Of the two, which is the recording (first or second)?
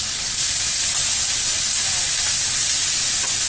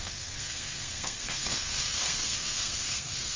first